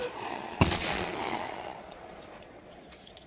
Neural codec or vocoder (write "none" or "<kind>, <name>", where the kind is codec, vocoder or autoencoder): vocoder, Vocos